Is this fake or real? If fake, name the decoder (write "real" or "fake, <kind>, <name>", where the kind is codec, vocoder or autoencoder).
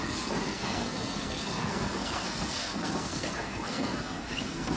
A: fake, codec, SNAC